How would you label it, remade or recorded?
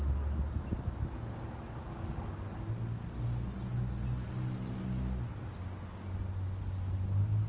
recorded